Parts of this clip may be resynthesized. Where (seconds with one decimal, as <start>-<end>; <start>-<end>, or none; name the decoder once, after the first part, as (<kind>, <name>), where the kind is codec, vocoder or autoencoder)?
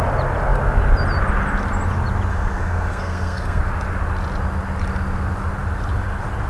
2.3-3.6 (codec, SNAC)